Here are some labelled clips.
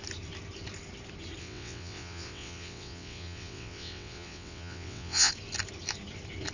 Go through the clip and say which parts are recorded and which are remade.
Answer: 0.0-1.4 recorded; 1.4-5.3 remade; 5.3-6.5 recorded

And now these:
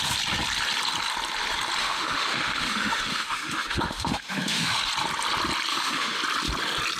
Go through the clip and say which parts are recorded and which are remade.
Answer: 0.0-1.8 recorded; 1.8-4.8 remade; 4.8-5.7 recorded; 5.7-6.2 remade; 6.2-7.0 recorded